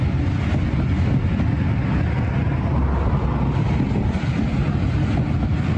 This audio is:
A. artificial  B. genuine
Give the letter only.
B